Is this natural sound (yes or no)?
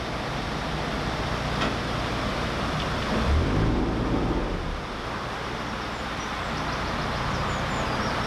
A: yes